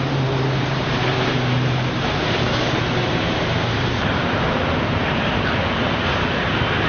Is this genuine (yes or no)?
no